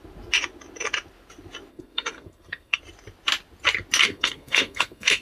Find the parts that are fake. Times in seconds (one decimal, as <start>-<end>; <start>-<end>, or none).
1.7-2.8; 4.0-5.2